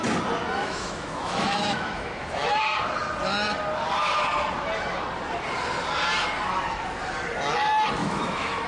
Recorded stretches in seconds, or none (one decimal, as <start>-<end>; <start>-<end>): 0.0-0.6; 2.6-8.0